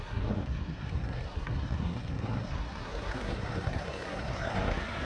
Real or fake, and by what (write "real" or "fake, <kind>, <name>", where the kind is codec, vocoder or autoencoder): fake, codec, SNAC